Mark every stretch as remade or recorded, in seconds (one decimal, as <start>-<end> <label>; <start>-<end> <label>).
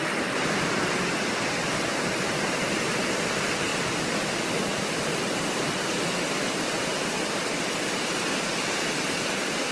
0.0-9.7 recorded